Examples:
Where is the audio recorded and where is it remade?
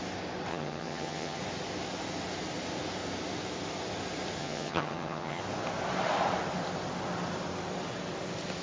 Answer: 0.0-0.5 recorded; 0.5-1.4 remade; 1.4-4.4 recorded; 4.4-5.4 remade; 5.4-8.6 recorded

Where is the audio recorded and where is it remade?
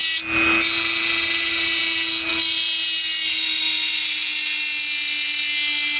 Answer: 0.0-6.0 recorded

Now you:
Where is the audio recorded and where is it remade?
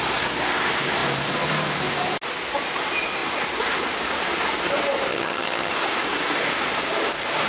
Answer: 0.0-5.1 recorded; 5.1-5.7 remade; 5.7-7.5 recorded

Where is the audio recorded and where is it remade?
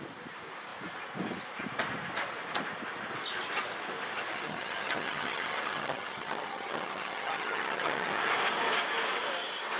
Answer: 0.0-4.3 recorded; 4.3-8.3 remade; 8.3-9.8 recorded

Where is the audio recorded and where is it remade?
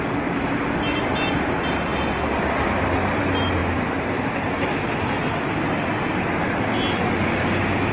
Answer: 0.0-7.9 recorded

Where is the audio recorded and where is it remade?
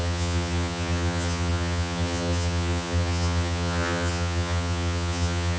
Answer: 0.0-5.6 remade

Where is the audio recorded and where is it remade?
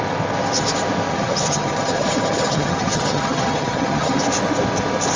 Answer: 0.0-1.1 recorded; 1.1-4.2 remade; 4.2-5.2 recorded